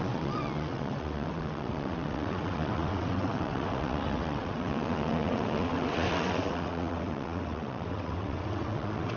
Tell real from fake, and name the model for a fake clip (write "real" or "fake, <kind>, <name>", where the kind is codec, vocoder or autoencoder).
fake, vocoder, WaveNeXt